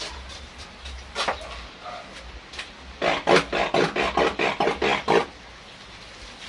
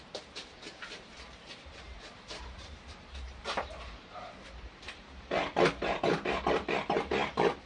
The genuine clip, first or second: first